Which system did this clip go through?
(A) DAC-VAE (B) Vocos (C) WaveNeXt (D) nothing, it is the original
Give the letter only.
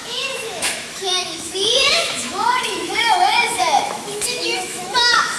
A